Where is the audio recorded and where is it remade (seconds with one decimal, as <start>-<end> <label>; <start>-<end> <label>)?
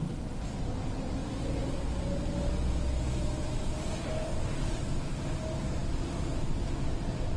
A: 0.0-7.4 recorded